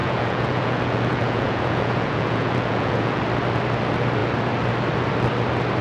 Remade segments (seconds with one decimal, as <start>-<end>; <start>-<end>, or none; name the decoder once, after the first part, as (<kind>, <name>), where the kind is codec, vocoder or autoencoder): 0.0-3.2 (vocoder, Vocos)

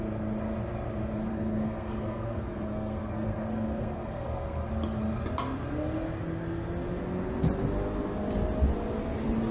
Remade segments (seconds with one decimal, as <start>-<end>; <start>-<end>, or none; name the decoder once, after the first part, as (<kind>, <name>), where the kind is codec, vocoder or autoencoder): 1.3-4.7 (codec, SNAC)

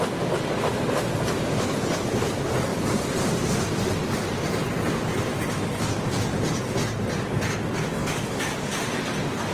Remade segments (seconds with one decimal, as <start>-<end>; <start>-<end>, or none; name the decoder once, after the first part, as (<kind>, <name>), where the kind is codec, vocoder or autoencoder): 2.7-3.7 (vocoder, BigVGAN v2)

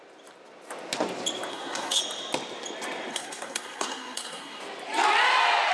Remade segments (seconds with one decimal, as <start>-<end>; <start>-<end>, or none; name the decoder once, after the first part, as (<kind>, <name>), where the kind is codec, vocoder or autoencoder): 1.5-2.0 (codec, SNAC); 3.1-4.6

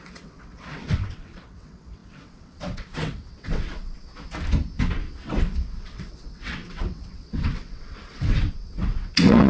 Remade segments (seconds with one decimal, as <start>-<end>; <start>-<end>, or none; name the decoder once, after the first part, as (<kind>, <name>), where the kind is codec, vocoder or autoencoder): 0.0-4.1 (vocoder, WaveNeXt); 5.1-9.5

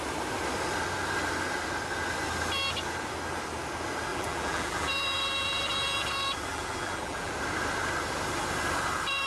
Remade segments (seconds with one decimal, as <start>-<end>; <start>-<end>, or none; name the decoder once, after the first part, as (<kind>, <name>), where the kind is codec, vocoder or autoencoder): 4.1-6.1 (vocoder, BigVGAN v2); 6.5-7.3